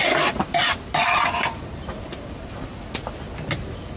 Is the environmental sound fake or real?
real